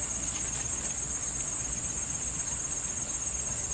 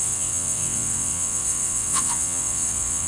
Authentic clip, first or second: first